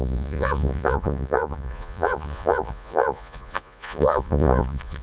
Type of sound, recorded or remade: remade